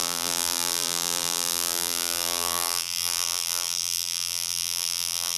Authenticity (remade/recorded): remade